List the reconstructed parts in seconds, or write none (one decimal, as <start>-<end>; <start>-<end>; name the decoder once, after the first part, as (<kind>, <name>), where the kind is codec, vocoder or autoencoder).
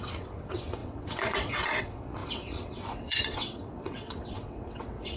0.0-5.2 (vocoder, WaveNeXt)